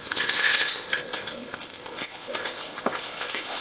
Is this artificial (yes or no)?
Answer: yes